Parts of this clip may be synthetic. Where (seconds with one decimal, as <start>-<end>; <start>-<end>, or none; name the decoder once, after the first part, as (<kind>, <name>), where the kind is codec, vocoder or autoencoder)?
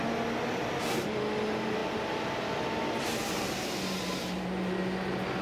none